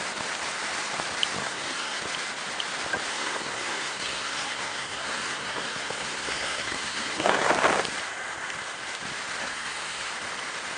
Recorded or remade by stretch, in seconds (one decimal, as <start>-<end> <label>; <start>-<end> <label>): 0.0-1.4 recorded; 1.4-2.0 remade; 2.0-3.1 recorded; 3.1-7.5 remade; 7.5-9.4 recorded; 9.4-10.1 remade; 10.1-10.8 recorded